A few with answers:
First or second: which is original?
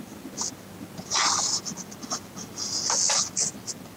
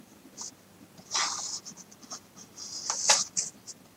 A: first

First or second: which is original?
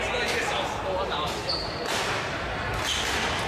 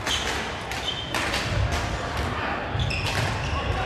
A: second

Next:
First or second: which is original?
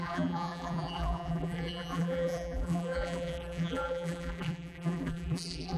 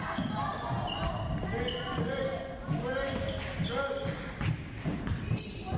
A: second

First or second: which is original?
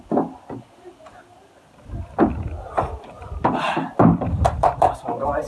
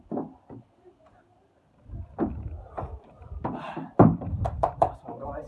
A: first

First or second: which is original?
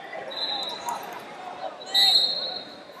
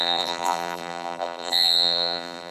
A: first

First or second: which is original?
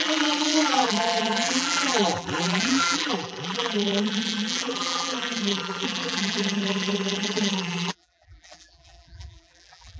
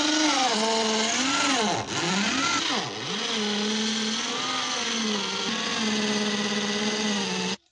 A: second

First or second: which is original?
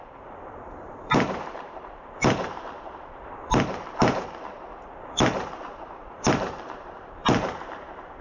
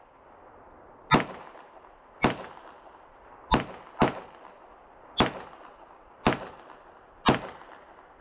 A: second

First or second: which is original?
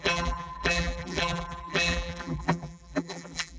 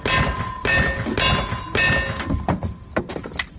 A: second